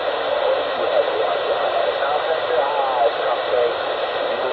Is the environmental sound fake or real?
real